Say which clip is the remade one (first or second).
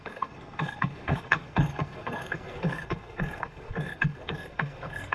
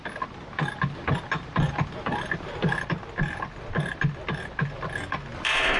first